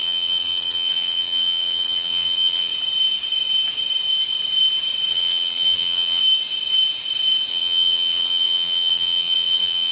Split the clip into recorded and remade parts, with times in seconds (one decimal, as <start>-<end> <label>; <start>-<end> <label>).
0.0-2.7 remade; 2.7-5.1 recorded; 5.1-6.2 remade; 6.2-7.5 recorded; 7.5-9.9 remade